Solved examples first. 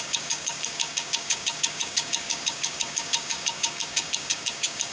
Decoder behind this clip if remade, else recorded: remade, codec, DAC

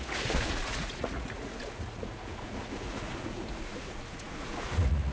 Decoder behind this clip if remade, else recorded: remade, vocoder, Vocos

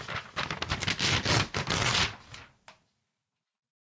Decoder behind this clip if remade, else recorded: recorded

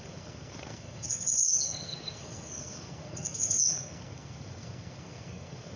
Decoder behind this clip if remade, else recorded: remade, codec, SNAC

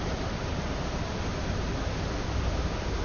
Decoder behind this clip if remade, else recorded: recorded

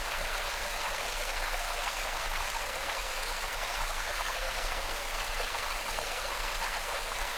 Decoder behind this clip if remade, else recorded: remade, codec, SNAC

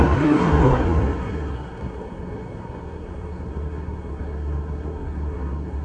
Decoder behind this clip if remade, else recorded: remade, codec, SNAC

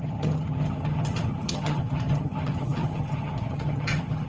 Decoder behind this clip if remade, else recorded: remade, vocoder, HiFi-GAN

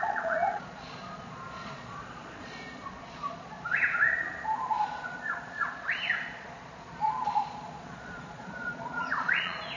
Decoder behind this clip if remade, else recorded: remade, vocoder, Vocos